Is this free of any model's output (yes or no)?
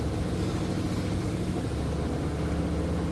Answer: yes